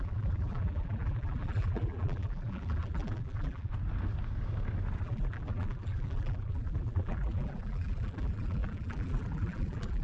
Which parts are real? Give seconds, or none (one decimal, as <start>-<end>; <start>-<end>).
3.7-5.0